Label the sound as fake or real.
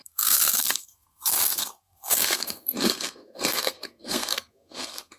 fake